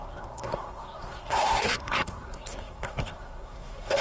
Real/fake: fake